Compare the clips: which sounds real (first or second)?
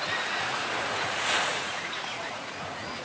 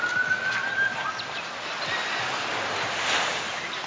second